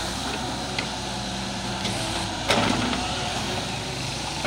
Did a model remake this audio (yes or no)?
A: yes